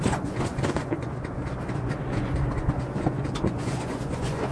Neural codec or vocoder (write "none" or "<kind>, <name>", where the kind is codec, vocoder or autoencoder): vocoder, Vocos